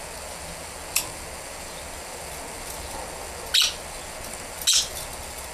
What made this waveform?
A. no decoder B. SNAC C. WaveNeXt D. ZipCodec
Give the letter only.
A